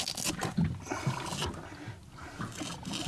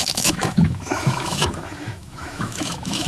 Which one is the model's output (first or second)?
second